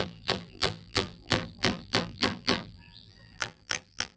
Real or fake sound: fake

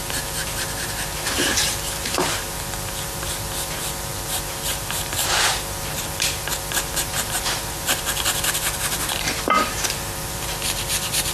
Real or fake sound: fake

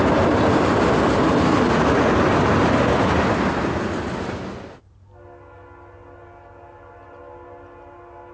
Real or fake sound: real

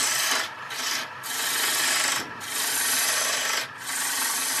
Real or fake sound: real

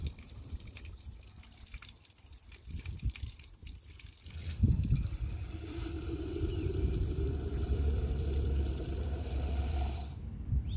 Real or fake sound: fake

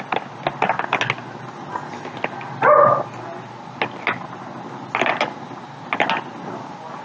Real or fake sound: real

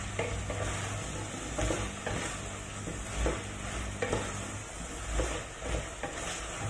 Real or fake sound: real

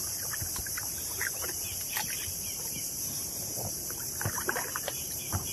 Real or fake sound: fake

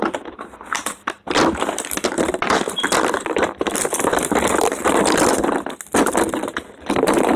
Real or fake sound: real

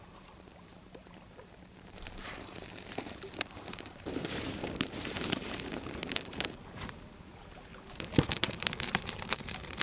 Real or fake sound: fake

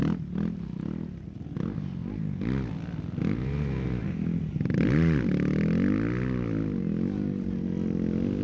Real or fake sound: real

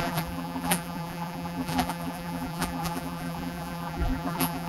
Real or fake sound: fake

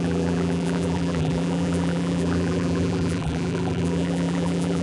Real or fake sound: fake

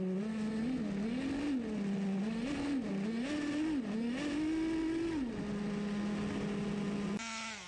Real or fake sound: real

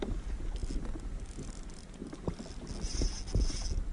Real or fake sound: real